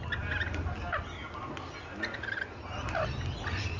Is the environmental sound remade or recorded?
recorded